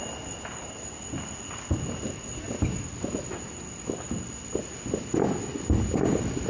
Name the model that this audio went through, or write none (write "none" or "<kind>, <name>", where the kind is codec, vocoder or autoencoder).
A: none